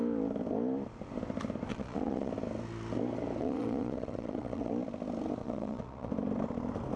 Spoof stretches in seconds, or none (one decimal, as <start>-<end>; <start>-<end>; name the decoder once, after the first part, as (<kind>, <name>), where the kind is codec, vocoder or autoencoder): 1.7-2.3 (vocoder, Vocos); 3.4-4.7; 5.4-6.1